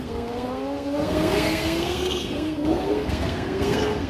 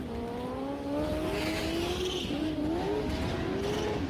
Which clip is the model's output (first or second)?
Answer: first